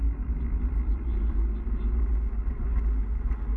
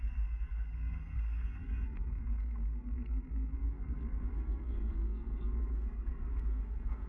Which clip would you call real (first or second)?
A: first